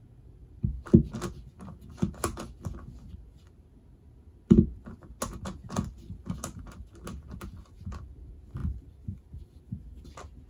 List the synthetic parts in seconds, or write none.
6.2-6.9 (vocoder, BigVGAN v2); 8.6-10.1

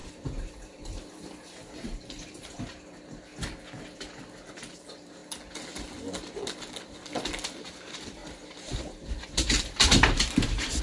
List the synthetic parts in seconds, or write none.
0.0-3.3 (vocoder, BigVGAN v2); 4.5-5.2; 7.6-10.8

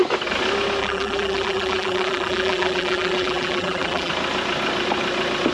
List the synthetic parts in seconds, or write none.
0.8-4.1 (vocoder, BigVGAN v2)